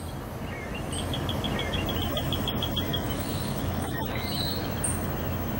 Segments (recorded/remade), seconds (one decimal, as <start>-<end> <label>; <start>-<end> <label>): 0.0-2.9 recorded; 2.9-4.7 remade; 4.7-5.6 recorded